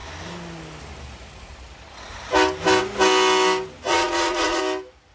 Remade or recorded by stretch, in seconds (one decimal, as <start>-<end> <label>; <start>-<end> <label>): 0.0-3.9 recorded; 3.9-4.6 remade; 4.6-5.1 recorded